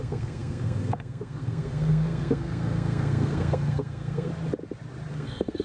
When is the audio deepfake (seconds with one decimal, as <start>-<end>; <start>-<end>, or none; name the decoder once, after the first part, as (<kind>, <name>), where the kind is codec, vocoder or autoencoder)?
0.0-4.3 (codec, SNAC); 5.1-5.6